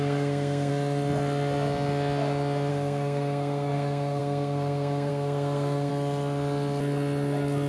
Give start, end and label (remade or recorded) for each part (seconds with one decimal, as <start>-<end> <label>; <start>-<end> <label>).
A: 0.0-0.7 remade; 0.7-2.7 recorded; 2.7-5.9 remade; 5.9-7.7 recorded